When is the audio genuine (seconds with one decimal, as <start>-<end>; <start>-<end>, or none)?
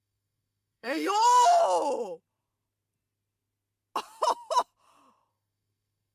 1.6-5.3